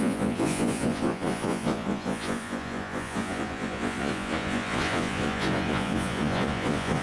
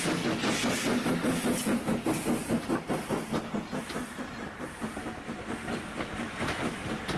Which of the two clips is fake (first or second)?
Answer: first